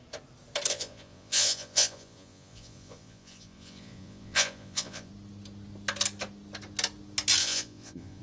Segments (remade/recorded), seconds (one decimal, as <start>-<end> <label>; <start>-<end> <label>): 0.0-0.7 recorded; 0.7-5.1 remade; 5.1-7.4 recorded; 7.4-8.2 remade